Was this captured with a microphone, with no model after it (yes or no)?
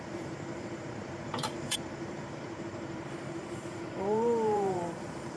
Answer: no